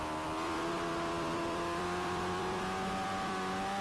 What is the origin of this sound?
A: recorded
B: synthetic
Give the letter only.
B